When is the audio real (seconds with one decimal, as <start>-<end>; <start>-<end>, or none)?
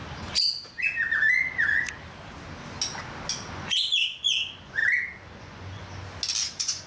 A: 0.0-3.5; 4.8-5.4; 5.9-6.5